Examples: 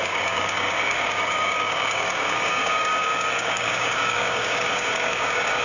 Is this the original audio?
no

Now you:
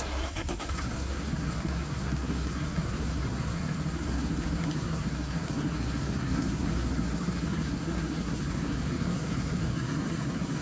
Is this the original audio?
no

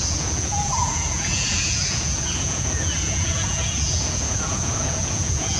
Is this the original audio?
no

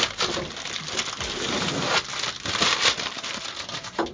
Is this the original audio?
no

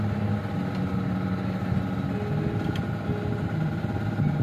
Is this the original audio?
yes